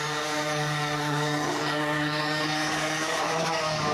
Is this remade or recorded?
remade